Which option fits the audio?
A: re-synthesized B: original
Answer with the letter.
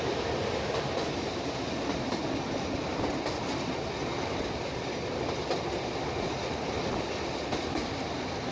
B